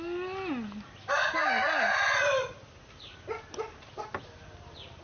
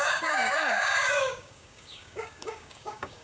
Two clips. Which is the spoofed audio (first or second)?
second